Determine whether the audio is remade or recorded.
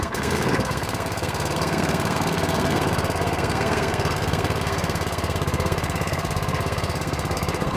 remade